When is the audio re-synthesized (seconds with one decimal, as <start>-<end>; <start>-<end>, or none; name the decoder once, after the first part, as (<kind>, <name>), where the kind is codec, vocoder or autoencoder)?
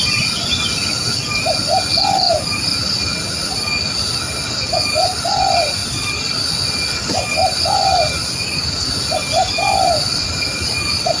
none